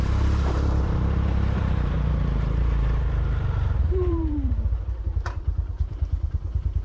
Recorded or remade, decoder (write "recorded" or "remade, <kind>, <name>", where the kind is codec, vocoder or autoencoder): remade, vocoder, BigVGAN v2